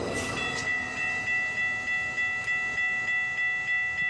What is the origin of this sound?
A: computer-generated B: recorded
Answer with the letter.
B